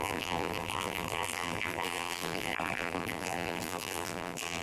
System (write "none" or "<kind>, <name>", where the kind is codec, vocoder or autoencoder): vocoder, BigVGAN v2